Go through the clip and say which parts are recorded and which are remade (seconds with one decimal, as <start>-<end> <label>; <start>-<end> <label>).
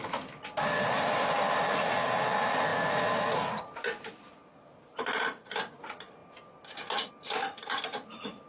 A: 0.0-8.5 recorded